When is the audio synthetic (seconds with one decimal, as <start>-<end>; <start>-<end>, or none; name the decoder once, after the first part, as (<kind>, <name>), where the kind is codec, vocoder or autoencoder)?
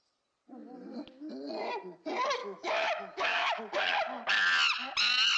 2.4-3.6 (autoencoder, DAC-VAE)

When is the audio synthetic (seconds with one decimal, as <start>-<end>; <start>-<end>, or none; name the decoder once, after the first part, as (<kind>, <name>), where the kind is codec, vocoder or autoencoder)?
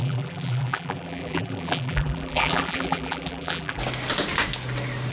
0.0-3.8 (vocoder, BigVGAN v2)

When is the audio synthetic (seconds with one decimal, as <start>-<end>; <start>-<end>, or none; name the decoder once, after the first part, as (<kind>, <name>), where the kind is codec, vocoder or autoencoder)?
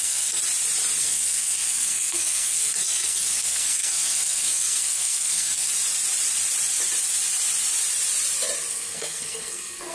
0.0-0.4 (codec, SNAC); 1.0-5.7; 8.7-9.9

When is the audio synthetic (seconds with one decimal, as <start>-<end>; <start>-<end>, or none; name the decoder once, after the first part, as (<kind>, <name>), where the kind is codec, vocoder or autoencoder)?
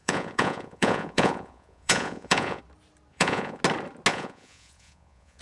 0.0-2.6 (vocoder, Vocos); 3.1-3.6; 4.1-5.4